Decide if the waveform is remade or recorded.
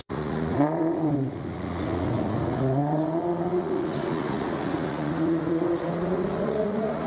remade